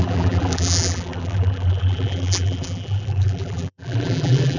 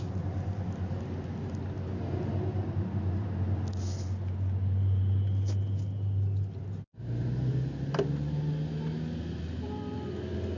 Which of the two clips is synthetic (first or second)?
first